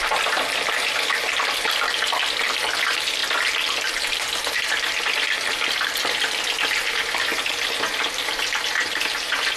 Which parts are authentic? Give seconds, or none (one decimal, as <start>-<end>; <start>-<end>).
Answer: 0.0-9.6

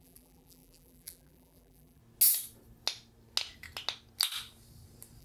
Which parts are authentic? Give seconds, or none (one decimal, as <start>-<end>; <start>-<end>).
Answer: 2.0-5.2

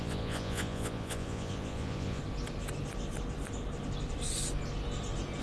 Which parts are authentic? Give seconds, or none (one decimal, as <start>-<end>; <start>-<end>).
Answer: 2.2-5.4